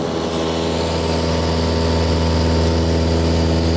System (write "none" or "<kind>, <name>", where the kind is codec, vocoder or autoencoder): none